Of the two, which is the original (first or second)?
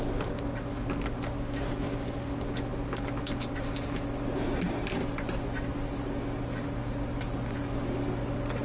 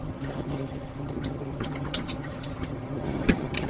first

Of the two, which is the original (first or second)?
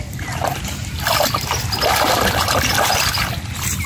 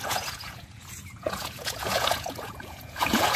first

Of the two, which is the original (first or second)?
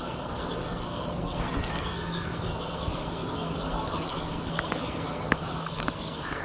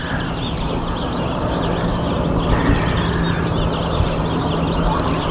second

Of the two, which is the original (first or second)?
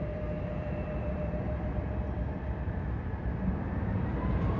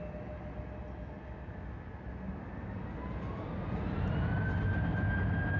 second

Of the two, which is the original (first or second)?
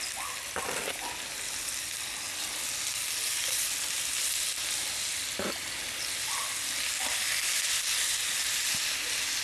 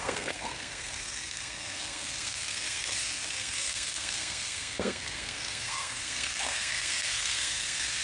first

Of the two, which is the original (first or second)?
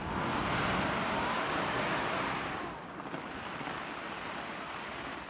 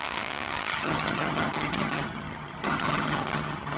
first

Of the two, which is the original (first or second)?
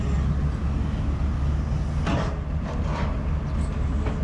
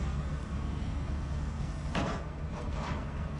first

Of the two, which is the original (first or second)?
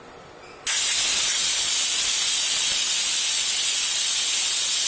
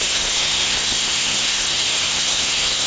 first